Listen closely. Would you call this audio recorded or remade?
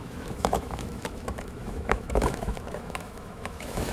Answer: remade